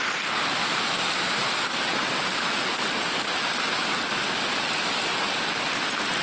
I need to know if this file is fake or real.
real